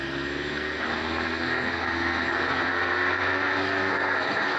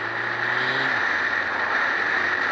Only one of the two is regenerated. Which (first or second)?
first